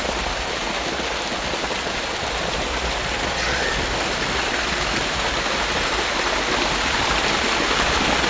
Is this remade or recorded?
recorded